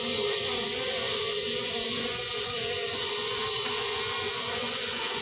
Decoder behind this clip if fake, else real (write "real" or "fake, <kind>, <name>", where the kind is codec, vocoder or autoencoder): fake, vocoder, Vocos